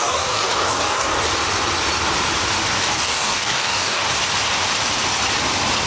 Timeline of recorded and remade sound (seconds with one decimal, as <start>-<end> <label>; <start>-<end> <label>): 0.0-1.1 remade; 1.1-2.8 recorded; 2.8-4.0 remade; 4.0-5.9 recorded